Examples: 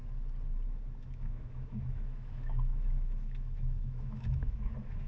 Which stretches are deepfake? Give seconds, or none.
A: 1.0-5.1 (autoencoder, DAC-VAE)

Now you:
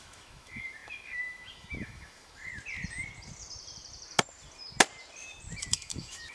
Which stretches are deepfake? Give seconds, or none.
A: 0.0-2.5 (autoencoder, DAC-VAE); 5.7-6.3